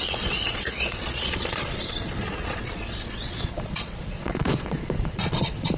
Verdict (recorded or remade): remade